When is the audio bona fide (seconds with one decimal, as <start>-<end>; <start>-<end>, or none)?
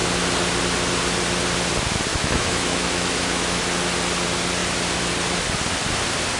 0.0-2.1; 3.6-6.4